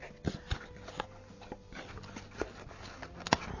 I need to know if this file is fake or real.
real